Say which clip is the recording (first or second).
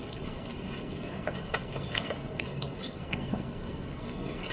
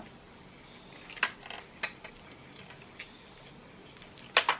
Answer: second